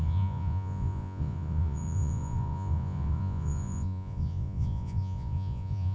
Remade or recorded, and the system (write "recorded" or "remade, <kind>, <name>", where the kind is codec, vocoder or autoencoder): remade, vocoder, Vocos